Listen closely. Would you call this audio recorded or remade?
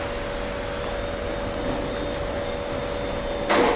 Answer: recorded